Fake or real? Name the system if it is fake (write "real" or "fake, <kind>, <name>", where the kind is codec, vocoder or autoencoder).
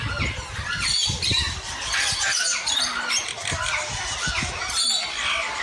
real